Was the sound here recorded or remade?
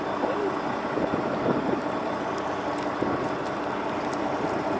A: recorded